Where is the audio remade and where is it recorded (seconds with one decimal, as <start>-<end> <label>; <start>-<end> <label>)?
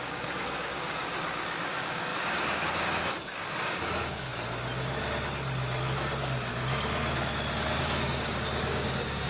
0.0-1.1 remade; 1.1-1.6 recorded; 1.6-4.3 remade; 4.3-7.8 recorded; 7.8-9.3 remade